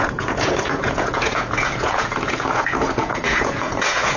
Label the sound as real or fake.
fake